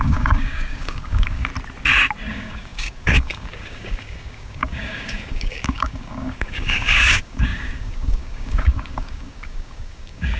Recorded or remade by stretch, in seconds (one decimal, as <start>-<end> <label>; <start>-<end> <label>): 0.0-1.5 remade; 1.5-2.3 recorded; 2.3-10.4 remade